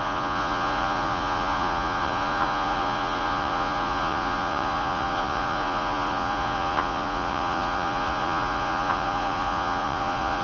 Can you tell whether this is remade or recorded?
remade